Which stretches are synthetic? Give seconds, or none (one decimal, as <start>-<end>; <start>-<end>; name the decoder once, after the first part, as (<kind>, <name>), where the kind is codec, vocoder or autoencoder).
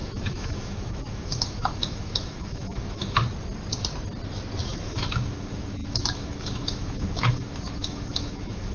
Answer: 0.0-3.2 (autoencoder, DAC-VAE); 4.6-8.7